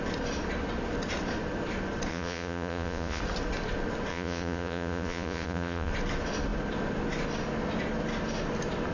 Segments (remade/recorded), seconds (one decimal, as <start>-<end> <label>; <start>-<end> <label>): 0.0-2.1 recorded; 2.1-3.2 remade; 3.2-4.1 recorded; 4.1-5.9 remade; 5.9-8.9 recorded